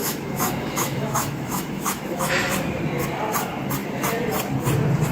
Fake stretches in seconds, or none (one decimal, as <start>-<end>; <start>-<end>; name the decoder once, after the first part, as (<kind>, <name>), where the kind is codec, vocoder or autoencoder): 0.0-2.3 (autoencoder, DAC-VAE)